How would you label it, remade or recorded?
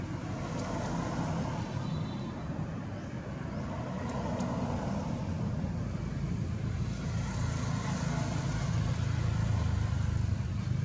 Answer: recorded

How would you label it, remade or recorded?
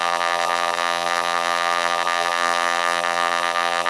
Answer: remade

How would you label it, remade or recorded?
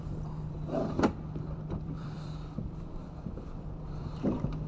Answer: remade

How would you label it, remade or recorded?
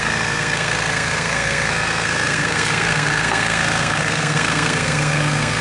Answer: remade